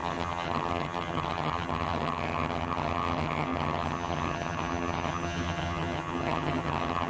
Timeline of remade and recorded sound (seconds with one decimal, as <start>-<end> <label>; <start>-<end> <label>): 0.0-7.1 remade